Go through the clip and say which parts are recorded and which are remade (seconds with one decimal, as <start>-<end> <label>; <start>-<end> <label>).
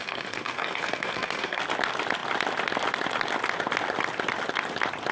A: 0.0-1.6 remade; 1.6-5.1 recorded